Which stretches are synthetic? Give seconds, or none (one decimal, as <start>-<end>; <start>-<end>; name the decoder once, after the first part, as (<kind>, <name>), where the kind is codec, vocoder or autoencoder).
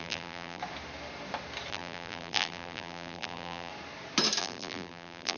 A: 0.0-0.6 (vocoder, BigVGAN v2); 1.7-3.7; 4.4-5.4